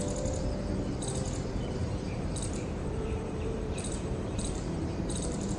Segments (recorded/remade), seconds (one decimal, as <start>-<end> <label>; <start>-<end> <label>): 0.0-1.8 recorded; 1.8-5.6 remade